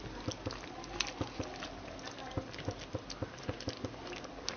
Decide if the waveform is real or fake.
real